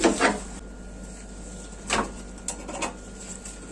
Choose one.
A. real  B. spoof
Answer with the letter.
A